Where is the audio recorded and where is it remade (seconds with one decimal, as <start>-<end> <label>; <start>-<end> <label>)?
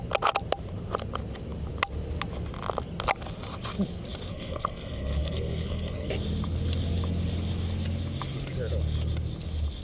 0.0-4.3 recorded; 4.3-6.1 remade; 6.1-9.8 recorded